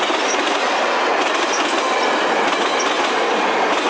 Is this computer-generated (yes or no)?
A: no